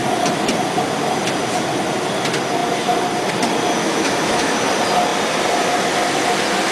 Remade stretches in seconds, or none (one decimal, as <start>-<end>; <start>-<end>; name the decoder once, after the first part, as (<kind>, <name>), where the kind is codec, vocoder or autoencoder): 3.8-4.5 (autoencoder, DAC-VAE)